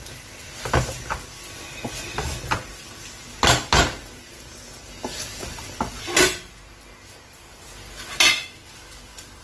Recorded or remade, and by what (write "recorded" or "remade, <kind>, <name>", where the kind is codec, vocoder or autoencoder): recorded